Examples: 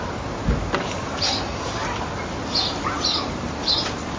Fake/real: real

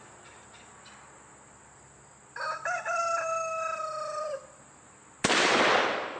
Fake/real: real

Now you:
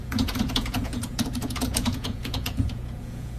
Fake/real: fake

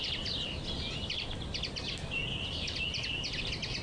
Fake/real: real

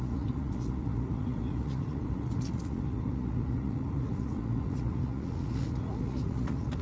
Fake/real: fake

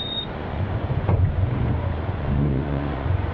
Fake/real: fake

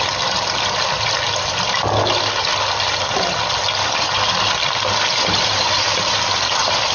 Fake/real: real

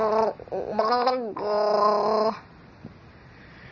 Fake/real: real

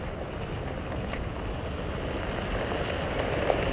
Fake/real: real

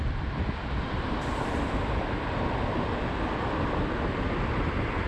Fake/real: real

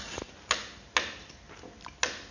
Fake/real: real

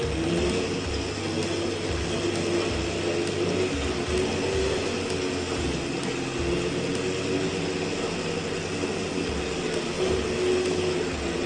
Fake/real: real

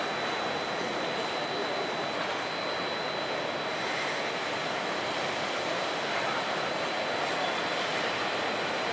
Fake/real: real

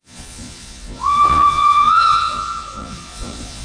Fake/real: fake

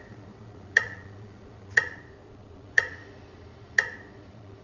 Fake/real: fake